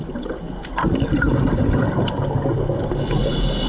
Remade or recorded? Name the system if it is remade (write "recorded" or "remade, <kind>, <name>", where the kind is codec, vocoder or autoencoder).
recorded